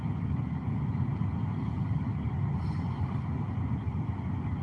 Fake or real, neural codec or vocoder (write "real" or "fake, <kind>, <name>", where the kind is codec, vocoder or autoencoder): real